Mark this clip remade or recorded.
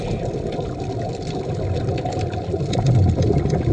recorded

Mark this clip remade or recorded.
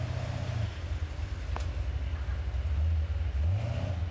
recorded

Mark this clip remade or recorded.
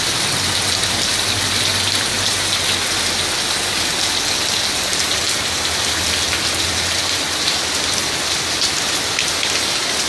recorded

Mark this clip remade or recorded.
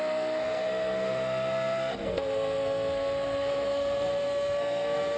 remade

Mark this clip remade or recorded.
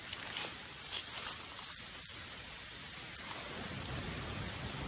recorded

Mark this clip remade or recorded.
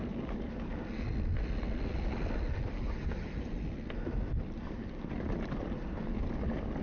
recorded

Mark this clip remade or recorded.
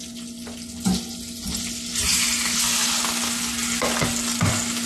recorded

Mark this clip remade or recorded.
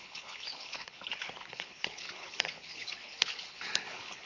remade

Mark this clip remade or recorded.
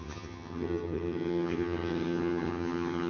remade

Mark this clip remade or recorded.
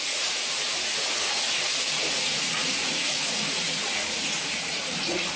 remade